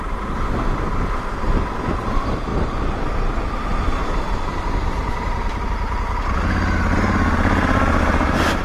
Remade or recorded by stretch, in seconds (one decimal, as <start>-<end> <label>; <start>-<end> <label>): 0.0-8.6 recorded